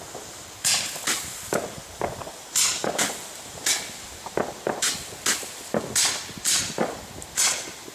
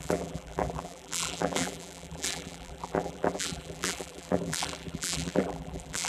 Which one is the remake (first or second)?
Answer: second